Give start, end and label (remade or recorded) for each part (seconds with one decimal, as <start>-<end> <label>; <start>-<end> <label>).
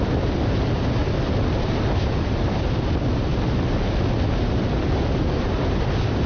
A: 0.0-1.0 remade; 1.0-1.5 recorded; 1.5-3.3 remade; 3.3-5.2 recorded; 5.2-6.3 remade